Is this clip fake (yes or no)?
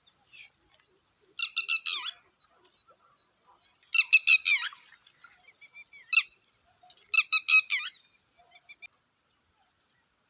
no